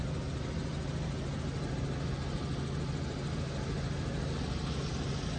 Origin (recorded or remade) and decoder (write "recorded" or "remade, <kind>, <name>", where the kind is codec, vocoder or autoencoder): recorded